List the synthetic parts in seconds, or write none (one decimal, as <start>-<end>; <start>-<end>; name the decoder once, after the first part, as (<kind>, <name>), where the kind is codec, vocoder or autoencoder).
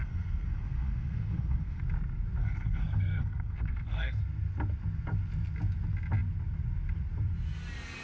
0.0-1.8 (codec, SNAC); 2.4-4.2